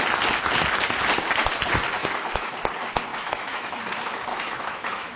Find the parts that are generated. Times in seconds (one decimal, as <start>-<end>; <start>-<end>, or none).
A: 2.0-2.5; 3.1-3.8; 4.3-5.2